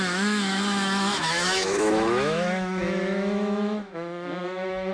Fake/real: fake